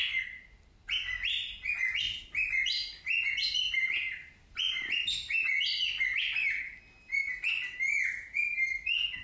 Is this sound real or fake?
real